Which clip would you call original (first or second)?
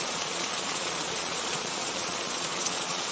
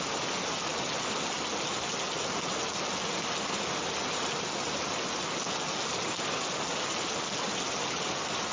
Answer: second